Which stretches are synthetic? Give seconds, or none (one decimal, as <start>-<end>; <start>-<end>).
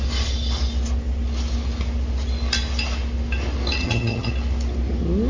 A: 3.8-4.3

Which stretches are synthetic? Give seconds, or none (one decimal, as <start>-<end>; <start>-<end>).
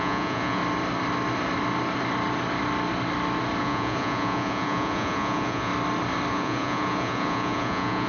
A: 0.0-0.6; 3.6-5.7; 6.3-8.1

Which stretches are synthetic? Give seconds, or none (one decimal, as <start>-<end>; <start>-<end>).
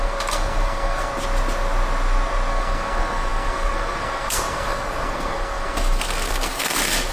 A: 0.0-1.1; 2.5-7.1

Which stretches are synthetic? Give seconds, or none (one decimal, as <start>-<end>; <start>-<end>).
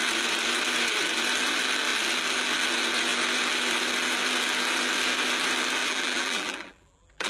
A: 5.8-7.3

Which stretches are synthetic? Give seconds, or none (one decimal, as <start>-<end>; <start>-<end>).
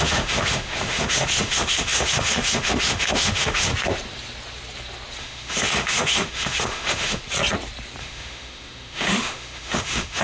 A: 0.0-3.7; 5.2-7.2; 8.0-10.2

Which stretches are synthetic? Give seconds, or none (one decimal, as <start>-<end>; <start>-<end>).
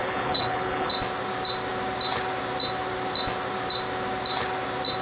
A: 0.0-0.9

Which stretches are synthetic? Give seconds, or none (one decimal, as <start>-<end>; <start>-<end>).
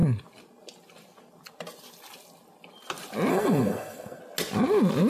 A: 3.3-4.2